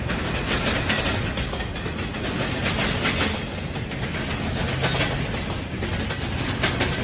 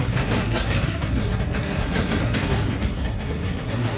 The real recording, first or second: first